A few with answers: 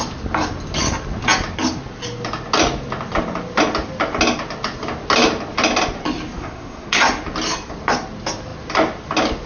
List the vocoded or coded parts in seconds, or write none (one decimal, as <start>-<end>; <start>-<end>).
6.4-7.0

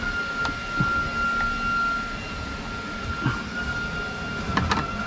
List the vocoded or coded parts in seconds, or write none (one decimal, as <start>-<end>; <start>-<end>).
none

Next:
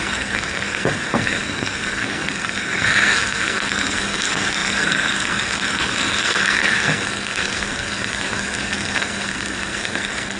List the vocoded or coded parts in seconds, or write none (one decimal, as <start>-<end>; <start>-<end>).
0.0-10.4

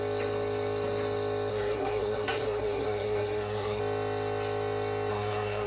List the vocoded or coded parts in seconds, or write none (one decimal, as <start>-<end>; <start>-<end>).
1.5-3.8; 5.1-5.7

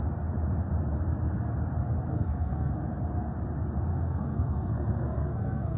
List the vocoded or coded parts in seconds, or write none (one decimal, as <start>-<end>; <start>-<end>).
2.1-2.7; 3.9-5.8